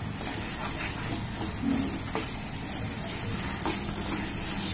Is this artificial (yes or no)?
no